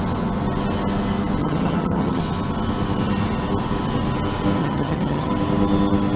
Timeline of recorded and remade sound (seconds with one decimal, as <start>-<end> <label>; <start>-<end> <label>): 0.0-1.4 recorded; 1.4-2.2 remade; 2.2-4.6 recorded; 4.6-5.3 remade; 5.3-6.2 recorded

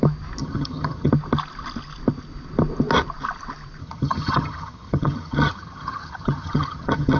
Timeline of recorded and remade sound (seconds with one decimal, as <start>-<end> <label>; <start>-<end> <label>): 0.0-0.4 recorded; 0.4-1.1 remade; 1.1-3.8 recorded; 3.8-7.2 remade

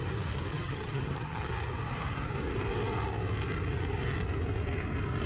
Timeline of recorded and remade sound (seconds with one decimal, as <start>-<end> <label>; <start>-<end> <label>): 0.0-0.5 recorded; 0.5-1.5 remade; 1.5-5.3 recorded

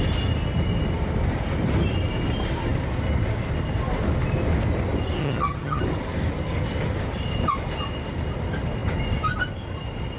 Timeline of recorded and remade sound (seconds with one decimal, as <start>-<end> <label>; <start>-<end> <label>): 0.0-5.2 recorded; 5.2-5.8 remade; 5.8-10.2 recorded

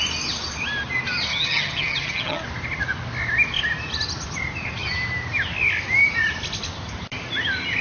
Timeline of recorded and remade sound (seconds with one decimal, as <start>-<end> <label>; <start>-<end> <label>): 0.0-1.3 recorded; 1.3-2.4 remade; 2.4-7.8 recorded

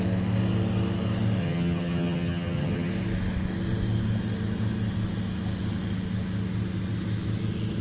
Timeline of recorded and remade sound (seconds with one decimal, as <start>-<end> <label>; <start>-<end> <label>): 0.0-1.4 recorded; 1.4-2.9 remade; 2.9-7.8 recorded

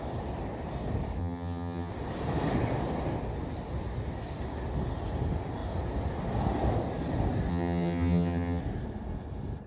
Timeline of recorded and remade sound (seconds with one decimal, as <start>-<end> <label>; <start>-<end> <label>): 0.0-1.2 recorded; 1.2-1.9 remade; 1.9-7.5 recorded; 7.5-8.6 remade; 8.6-9.7 recorded